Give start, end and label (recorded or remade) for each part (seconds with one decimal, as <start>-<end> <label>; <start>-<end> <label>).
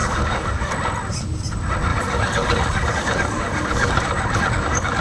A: 0.0-0.7 remade; 0.7-1.9 recorded; 1.9-5.0 remade